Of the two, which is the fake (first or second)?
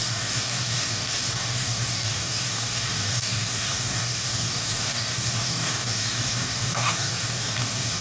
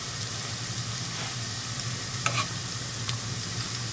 first